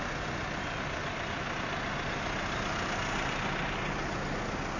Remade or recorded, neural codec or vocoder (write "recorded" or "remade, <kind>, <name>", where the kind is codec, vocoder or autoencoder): recorded